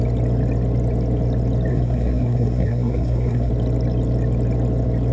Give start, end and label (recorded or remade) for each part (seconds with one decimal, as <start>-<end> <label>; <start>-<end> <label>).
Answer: 0.0-1.7 recorded; 1.7-3.5 remade; 3.5-5.1 recorded